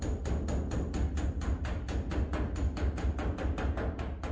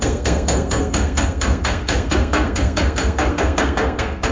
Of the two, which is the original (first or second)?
first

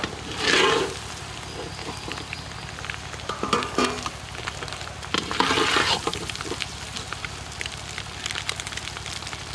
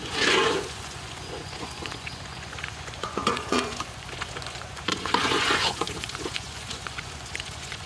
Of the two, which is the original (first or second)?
first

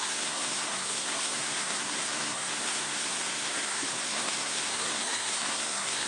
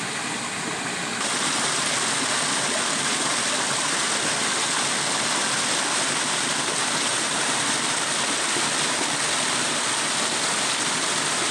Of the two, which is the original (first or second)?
second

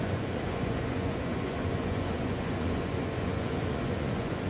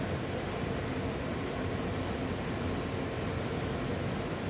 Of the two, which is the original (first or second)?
second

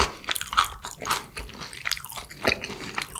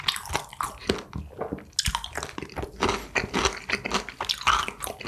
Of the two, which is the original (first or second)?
second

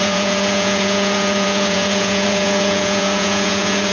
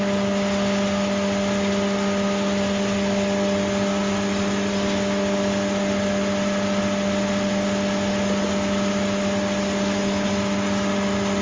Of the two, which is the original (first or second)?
second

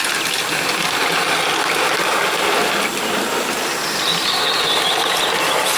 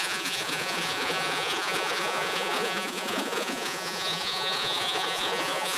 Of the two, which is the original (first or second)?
first